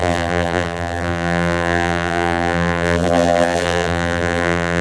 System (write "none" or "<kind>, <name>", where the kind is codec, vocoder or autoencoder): vocoder, BigVGAN v2